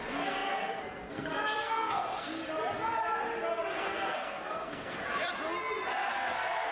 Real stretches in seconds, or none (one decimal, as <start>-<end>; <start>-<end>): 2.4-3.5; 5.0-6.1